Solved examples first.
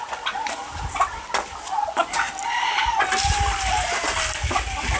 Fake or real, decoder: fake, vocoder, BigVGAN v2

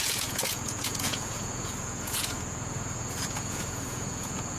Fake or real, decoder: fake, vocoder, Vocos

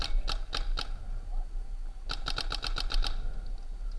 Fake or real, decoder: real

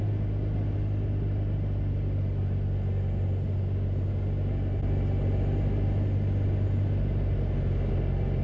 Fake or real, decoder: real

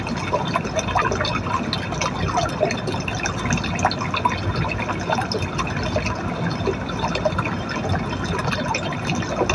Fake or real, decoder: real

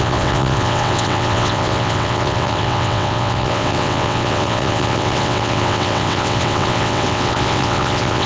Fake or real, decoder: fake, vocoder, WaveNeXt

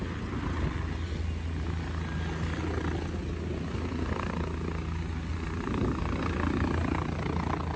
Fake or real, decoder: real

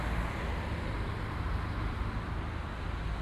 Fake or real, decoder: real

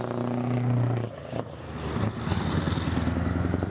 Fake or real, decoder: real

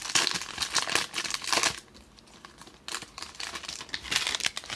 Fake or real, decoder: real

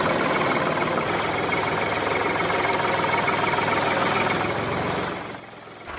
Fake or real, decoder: real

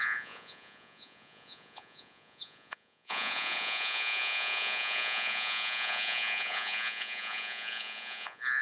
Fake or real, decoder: fake, vocoder, Vocos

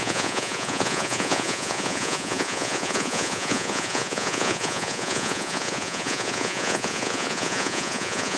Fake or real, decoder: fake, vocoder, Vocos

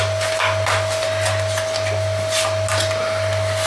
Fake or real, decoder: real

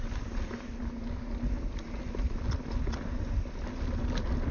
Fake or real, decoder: real